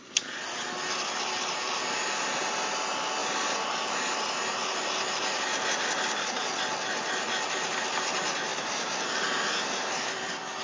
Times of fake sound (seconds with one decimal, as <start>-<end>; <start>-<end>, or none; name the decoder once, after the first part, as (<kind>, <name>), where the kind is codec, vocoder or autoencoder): none